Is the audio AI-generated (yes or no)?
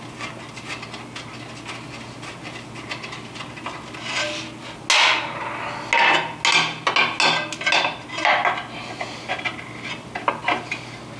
no